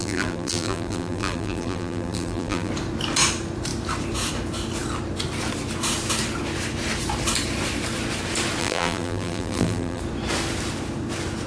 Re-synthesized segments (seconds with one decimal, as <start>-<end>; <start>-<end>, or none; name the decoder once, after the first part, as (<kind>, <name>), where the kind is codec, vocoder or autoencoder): 0.0-2.7 (vocoder, BigVGAN v2); 8.6-10.0